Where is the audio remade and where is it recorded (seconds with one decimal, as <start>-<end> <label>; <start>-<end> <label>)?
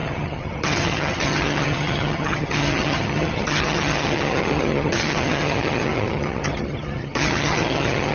0.0-8.1 remade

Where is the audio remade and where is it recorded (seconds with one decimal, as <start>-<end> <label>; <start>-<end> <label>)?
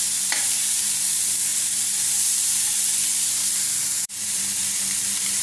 0.0-5.4 remade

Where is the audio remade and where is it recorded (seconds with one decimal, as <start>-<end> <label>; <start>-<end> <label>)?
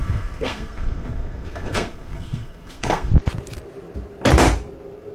0.0-3.1 remade; 3.1-5.1 recorded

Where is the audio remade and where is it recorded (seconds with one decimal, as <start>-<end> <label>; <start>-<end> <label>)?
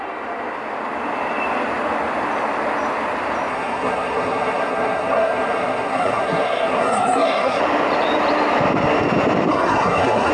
0.0-3.5 recorded; 3.5-7.6 remade; 7.6-9.5 recorded; 9.5-10.3 remade